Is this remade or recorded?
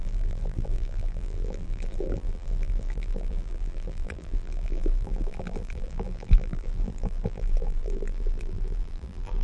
remade